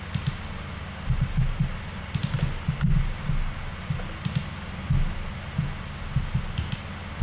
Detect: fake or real real